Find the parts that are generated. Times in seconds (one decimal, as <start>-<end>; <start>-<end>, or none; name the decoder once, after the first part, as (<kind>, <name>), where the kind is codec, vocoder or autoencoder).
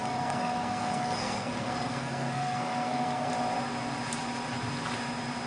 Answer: 0.0-3.3 (codec, SNAC)